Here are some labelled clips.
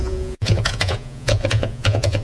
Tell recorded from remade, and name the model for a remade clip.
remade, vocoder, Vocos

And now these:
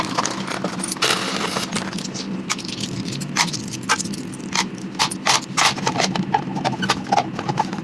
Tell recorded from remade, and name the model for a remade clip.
recorded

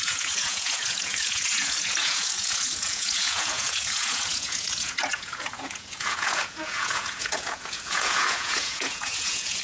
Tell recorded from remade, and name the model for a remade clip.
remade, vocoder, Vocos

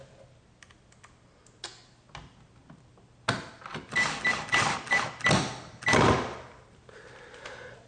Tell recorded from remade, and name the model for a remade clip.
recorded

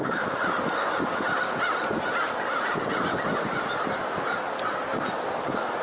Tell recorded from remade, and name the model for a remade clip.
recorded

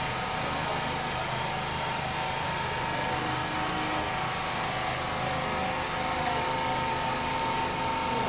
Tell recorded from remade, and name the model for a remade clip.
recorded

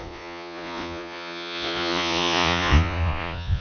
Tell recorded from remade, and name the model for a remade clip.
remade, vocoder, Vocos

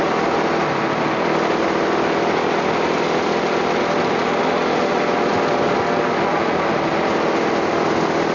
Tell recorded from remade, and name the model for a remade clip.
recorded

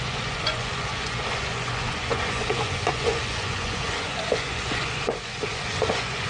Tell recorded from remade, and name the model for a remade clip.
remade, vocoder, Vocos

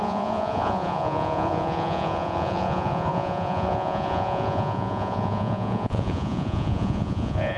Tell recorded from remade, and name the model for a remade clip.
remade, vocoder, Vocos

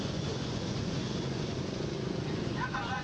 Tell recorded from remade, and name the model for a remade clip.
remade, vocoder, Vocos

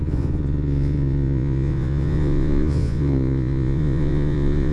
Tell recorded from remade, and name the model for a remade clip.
remade, vocoder, Vocos